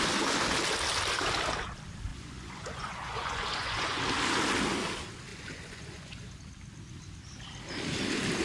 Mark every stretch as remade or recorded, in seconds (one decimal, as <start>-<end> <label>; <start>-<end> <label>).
0.0-2.1 recorded; 2.1-4.0 remade; 4.0-5.3 recorded; 5.3-6.4 remade; 6.4-8.4 recorded